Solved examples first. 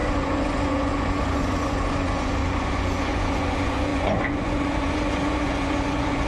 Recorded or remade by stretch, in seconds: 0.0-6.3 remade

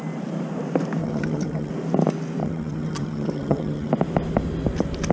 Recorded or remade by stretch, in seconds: 0.0-1.0 recorded; 1.0-1.7 remade; 1.7-2.4 recorded; 2.4-3.9 remade; 3.9-5.1 recorded

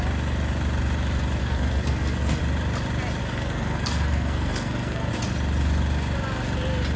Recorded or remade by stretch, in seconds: 0.0-1.4 recorded; 1.4-2.4 remade; 2.4-3.2 recorded; 3.2-5.1 remade; 5.1-7.0 recorded

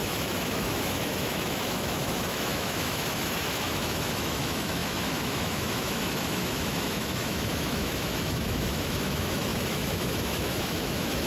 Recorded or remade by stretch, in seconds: 0.0-11.3 remade

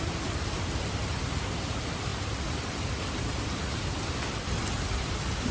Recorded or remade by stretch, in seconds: 0.0-5.5 recorded

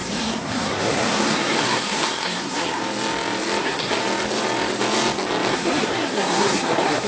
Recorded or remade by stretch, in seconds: 0.0-2.8 remade; 2.8-3.6 recorded; 3.6-4.0 remade; 4.0-5.5 recorded; 5.5-7.1 remade